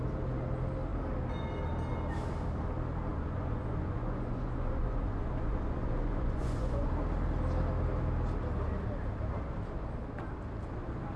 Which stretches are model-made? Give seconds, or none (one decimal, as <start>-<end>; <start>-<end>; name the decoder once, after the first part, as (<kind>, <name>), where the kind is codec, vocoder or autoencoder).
3.1-6.9 (vocoder, Vocos)